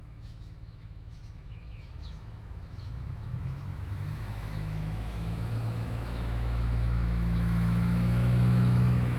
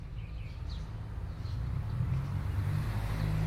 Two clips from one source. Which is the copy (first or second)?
first